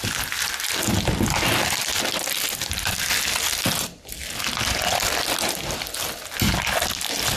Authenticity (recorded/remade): recorded